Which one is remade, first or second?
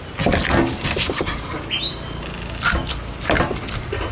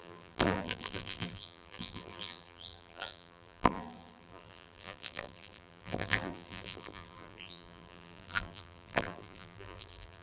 second